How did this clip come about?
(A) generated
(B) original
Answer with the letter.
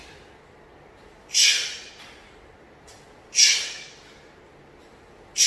B